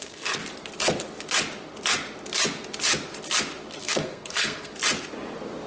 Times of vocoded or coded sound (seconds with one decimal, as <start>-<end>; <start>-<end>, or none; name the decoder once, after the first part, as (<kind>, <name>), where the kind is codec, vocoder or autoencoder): 0.0-0.4 (codec, SNAC); 3.8-4.7